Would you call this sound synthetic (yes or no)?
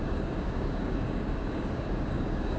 yes